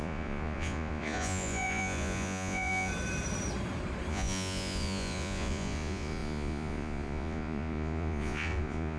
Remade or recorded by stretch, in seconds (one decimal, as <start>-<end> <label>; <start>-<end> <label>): 0.0-2.9 remade; 2.9-4.1 recorded; 4.1-9.0 remade